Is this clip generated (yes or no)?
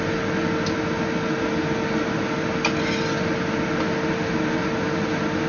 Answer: no